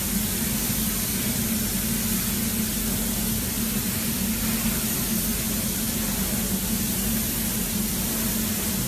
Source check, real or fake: real